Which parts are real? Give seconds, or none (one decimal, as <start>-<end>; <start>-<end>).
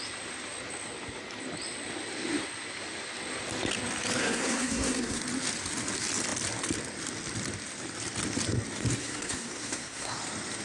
0.0-4.2; 5.2-9.0; 10.2-10.6